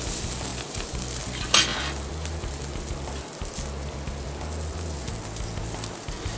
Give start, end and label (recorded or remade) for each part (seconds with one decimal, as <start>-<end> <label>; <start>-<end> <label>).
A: 0.0-6.4 recorded